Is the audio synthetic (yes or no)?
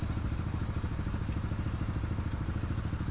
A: no